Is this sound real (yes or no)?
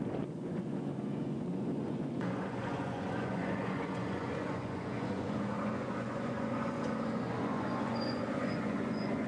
no